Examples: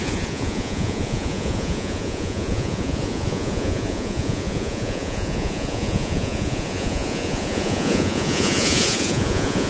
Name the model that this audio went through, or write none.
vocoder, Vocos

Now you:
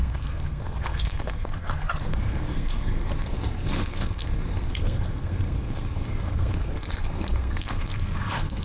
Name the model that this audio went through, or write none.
codec, SNAC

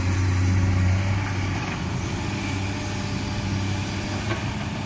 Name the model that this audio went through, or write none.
none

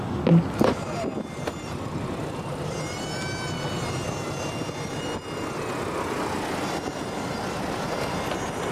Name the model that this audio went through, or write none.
none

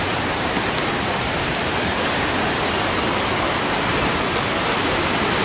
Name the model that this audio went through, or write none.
none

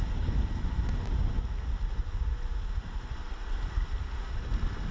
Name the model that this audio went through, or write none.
none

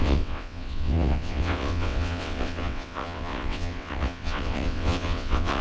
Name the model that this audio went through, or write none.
vocoder, WaveNeXt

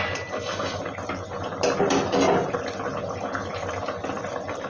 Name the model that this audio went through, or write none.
none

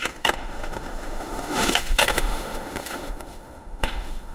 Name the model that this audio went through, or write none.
autoencoder, DAC-VAE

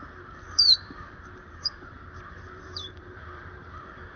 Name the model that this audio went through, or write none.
vocoder, BigVGAN v2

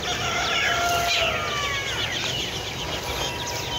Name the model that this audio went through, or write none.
none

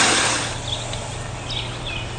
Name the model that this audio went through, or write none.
none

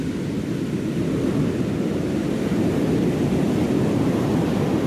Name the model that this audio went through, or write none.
none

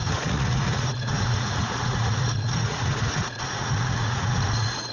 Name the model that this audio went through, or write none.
vocoder, Vocos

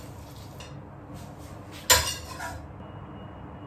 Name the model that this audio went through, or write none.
none